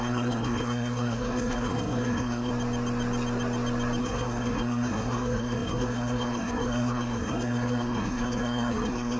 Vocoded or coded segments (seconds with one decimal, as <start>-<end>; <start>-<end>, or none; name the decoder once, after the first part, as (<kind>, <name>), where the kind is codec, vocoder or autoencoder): 0.0-2.5 (codec, SNAC); 4.0-9.2